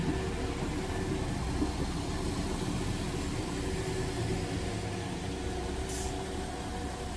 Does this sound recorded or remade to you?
recorded